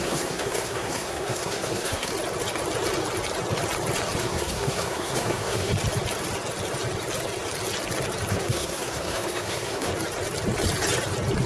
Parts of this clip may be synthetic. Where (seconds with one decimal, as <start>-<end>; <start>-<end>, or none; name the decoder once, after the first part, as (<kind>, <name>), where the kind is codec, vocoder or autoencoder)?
0.0-2.1 (codec, SNAC); 4.2-5.7; 8.3-9.9